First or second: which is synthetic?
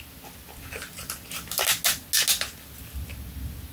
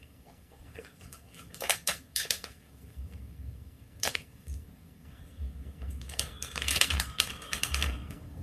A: second